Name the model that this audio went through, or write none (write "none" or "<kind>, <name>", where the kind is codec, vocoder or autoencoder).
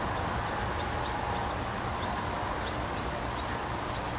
none